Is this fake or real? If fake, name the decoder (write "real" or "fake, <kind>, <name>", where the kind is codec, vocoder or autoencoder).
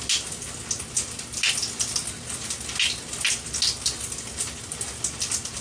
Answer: real